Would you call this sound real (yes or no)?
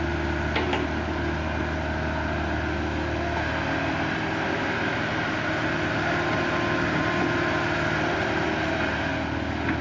yes